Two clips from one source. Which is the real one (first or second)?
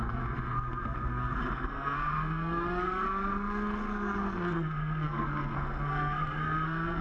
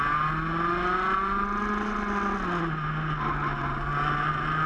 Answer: second